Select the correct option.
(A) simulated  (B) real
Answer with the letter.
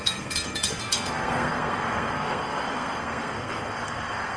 A